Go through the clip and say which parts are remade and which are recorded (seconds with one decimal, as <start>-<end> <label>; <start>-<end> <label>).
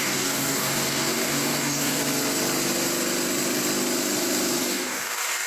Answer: 0.0-2.0 remade; 2.0-4.6 recorded; 4.6-5.5 remade